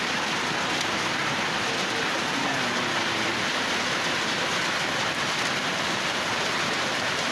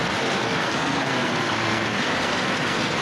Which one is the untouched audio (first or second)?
first